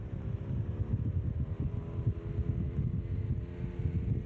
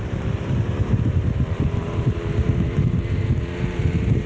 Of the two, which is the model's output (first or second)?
second